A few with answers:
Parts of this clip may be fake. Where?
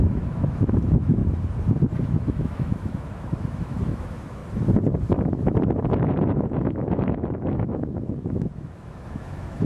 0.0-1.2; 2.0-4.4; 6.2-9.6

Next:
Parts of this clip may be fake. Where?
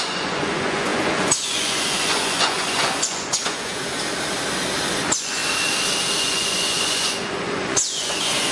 0.0-3.8; 4.9-5.4; 6.2-8.5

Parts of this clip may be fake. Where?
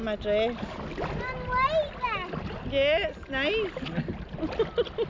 none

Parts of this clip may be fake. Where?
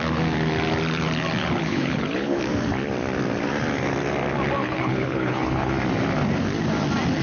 1.4-2.4; 4.6-5.7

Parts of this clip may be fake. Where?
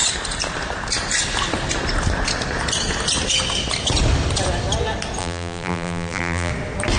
5.2-6.5